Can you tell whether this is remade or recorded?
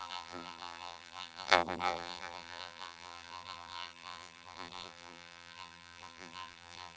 remade